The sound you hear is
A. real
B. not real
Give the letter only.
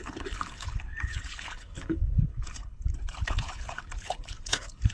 B